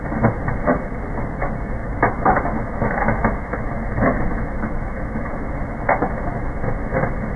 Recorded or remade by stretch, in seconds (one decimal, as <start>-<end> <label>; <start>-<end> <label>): 0.0-1.8 recorded; 1.8-5.5 remade; 5.5-7.4 recorded